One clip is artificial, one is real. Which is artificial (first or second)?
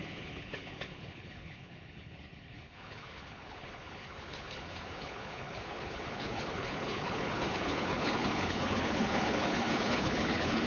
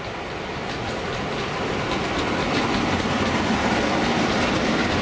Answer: first